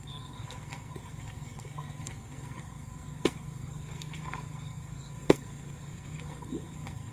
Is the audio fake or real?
fake